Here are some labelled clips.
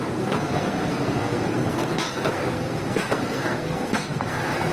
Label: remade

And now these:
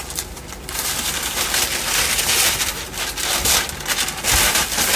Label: recorded